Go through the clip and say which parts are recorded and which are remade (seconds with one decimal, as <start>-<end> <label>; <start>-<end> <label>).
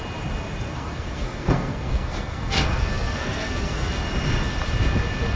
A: 0.0-0.7 recorded; 0.7-3.9 remade; 3.9-5.4 recorded